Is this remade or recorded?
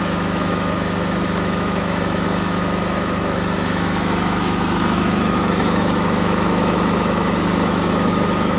remade